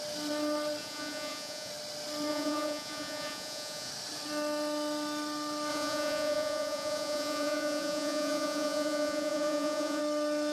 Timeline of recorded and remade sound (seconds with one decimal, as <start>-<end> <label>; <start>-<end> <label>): 0.0-0.8 recorded; 0.8-1.7 remade; 1.7-2.3 recorded; 2.3-3.9 remade; 3.9-5.7 recorded; 5.7-10.0 remade; 10.0-10.5 recorded

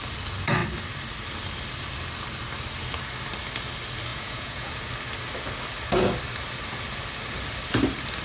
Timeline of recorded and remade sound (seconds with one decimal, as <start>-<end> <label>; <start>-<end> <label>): 0.0-4.1 recorded; 4.1-4.7 remade; 4.7-8.2 recorded